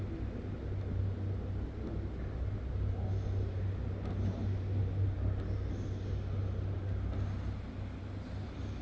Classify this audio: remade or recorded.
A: recorded